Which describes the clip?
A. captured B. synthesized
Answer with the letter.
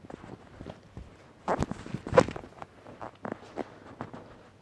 A